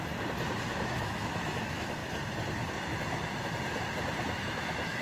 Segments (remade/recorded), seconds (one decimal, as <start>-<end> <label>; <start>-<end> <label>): 0.0-0.7 recorded; 0.7-2.0 remade; 2.0-4.3 recorded; 4.3-5.0 remade